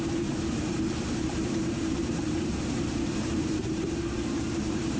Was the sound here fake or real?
fake